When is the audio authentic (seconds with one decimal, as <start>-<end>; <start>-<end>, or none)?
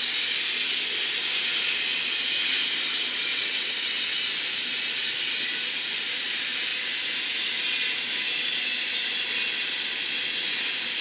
0.0-3.3; 4.2-11.0